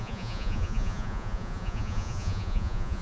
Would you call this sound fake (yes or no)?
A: yes